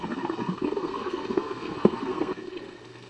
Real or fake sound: fake